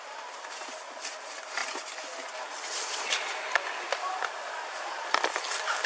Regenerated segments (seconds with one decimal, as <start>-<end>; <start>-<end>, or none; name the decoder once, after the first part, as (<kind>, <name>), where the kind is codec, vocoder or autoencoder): none